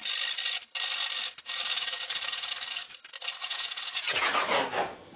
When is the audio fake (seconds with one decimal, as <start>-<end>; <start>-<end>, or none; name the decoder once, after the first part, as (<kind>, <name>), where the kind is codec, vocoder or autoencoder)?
1.7-2.5 (vocoder, Vocos); 3.4-4.3